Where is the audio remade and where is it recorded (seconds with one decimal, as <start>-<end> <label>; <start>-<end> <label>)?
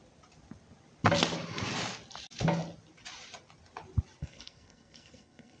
0.0-4.2 recorded; 4.2-5.6 remade